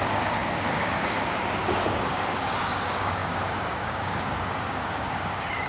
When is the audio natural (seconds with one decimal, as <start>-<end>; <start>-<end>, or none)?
none